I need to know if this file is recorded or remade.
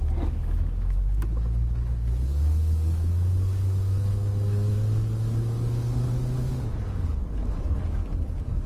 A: remade